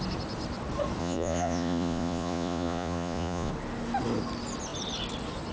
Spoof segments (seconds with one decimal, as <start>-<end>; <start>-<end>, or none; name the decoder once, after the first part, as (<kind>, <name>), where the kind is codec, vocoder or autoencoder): 1.0-3.5 (vocoder, Vocos)